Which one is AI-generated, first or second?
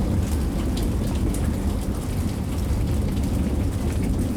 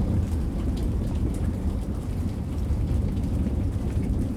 second